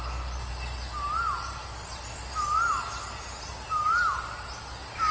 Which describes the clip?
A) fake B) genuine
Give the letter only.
B